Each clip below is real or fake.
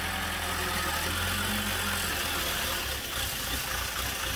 real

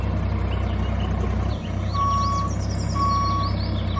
real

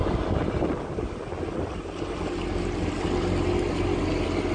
real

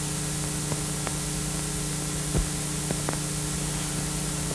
real